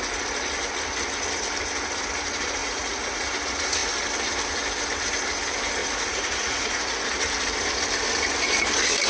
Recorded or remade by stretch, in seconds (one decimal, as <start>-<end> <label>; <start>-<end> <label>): 0.0-2.6 recorded; 2.6-3.3 remade; 3.3-5.8 recorded; 5.8-7.1 remade; 7.1-9.1 recorded